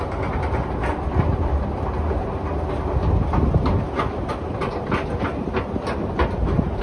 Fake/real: real